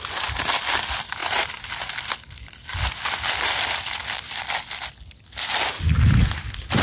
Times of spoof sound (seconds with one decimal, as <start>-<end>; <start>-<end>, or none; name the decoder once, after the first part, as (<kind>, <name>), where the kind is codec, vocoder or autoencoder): none

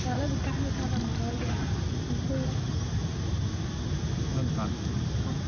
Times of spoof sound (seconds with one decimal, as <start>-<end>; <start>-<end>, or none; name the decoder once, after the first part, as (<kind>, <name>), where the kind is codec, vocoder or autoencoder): none

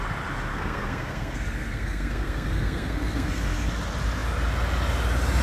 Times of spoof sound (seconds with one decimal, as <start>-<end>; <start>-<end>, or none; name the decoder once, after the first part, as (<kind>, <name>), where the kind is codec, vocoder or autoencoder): 0.5-3.7 (codec, SNAC)